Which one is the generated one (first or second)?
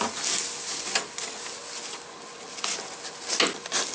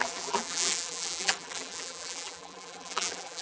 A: second